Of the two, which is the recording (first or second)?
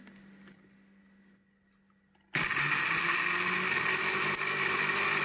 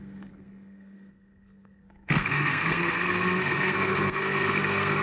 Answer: first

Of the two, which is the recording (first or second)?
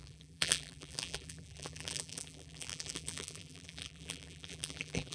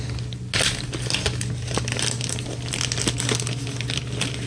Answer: second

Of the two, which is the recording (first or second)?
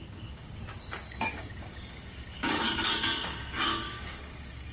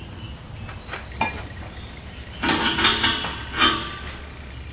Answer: second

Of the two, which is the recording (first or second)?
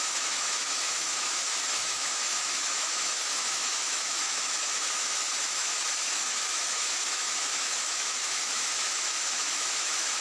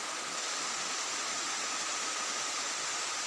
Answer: second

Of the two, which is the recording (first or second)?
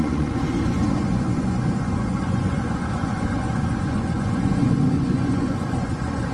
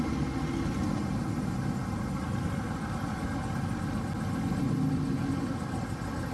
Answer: second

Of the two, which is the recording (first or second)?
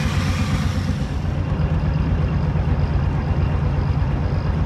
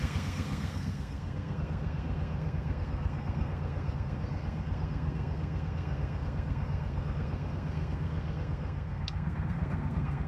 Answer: first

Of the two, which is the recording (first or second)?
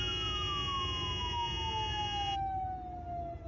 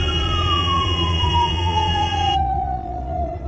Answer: first